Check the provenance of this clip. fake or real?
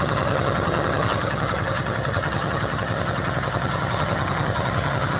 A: fake